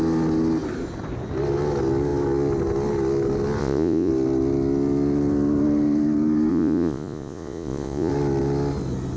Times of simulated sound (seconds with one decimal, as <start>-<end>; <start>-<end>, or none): 3.6-4.1; 6.5-8.1